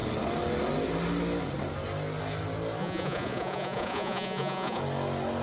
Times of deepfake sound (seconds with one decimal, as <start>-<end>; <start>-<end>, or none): 2.8-4.8